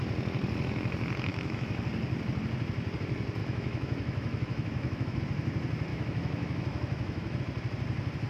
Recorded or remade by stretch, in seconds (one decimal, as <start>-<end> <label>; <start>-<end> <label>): 0.0-1.3 recorded; 1.3-1.8 remade; 1.8-3.4 recorded; 3.4-5.2 remade; 5.2-5.9 recorded; 5.9-7.4 remade; 7.4-8.3 recorded